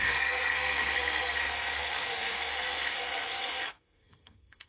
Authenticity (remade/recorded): remade